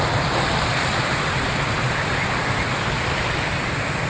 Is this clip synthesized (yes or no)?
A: no